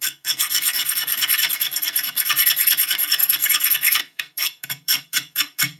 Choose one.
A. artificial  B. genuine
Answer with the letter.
A